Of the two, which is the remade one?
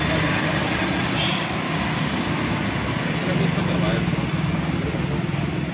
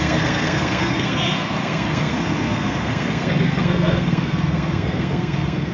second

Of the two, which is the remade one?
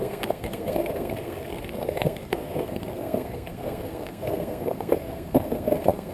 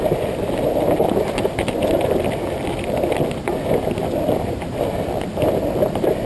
first